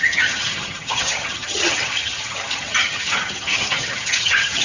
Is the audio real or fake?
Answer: fake